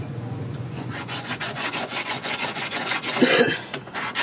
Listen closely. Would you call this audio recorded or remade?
remade